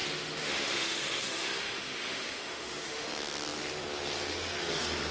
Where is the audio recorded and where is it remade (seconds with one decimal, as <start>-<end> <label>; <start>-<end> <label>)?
0.0-3.1 remade; 3.1-5.1 recorded